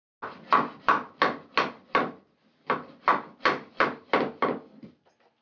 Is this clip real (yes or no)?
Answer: yes